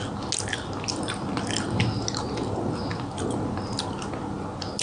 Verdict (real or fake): real